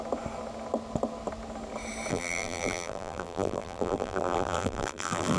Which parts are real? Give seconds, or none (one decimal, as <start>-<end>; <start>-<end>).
0.0-2.1